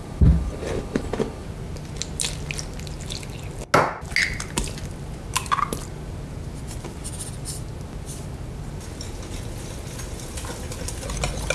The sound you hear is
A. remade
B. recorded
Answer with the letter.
B